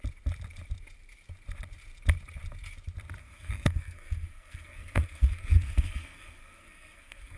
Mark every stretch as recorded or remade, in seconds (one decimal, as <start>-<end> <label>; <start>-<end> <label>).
0.0-3.2 recorded; 3.2-7.4 remade